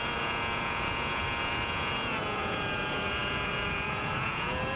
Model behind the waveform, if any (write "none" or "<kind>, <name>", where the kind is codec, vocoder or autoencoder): vocoder, Vocos